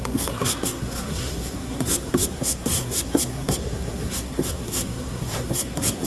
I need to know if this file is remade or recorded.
remade